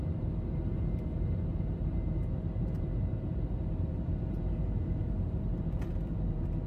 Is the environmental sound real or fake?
fake